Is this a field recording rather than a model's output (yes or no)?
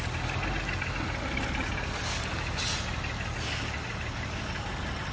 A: yes